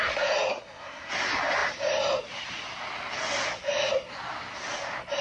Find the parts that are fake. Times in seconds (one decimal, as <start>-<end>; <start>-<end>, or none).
0.5-1.1

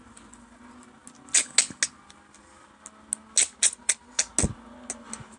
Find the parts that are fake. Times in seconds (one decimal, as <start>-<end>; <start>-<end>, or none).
none

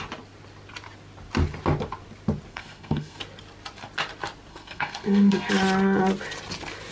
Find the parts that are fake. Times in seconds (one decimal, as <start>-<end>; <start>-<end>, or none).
2.5-3.2; 4.5-5.5

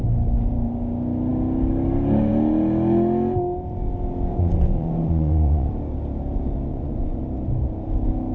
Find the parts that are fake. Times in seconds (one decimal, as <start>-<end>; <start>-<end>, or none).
4.3-5.7; 6.7-7.2

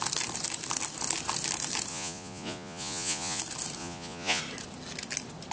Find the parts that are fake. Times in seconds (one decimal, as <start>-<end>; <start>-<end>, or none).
1.9-3.4; 3.8-4.4

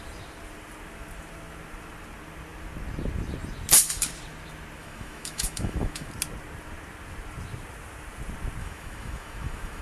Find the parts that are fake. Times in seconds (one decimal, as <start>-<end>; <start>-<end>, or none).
4.8-6.1; 8.6-9.8

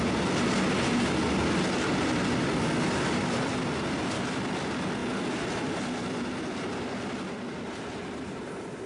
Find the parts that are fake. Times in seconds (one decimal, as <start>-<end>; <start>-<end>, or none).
none